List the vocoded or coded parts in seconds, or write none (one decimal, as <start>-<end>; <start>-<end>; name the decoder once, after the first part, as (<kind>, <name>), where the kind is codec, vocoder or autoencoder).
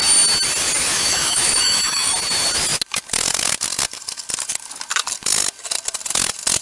0.9-2.1 (autoencoder, DAC-VAE)